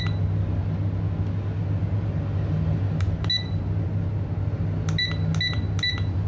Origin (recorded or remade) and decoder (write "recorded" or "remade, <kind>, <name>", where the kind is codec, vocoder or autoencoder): recorded